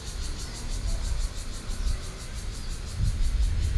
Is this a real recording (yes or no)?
yes